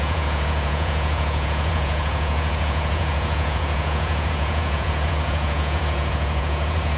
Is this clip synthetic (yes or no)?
yes